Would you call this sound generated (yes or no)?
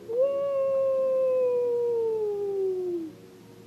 no